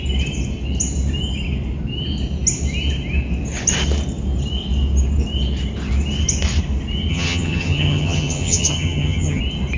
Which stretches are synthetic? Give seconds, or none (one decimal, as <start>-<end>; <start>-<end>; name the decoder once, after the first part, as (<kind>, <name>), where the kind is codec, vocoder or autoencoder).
7.1-9.4 (vocoder, HiFi-GAN)